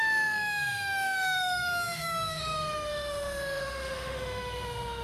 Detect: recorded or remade remade